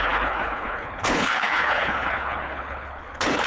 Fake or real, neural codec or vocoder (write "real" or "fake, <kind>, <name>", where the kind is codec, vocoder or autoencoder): fake, codec, HILCodec